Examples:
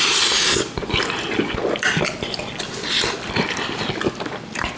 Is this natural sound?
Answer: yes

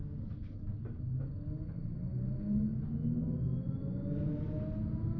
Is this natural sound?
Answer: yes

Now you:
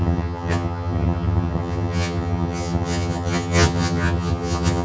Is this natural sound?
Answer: no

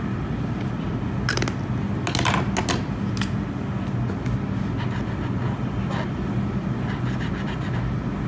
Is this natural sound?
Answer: yes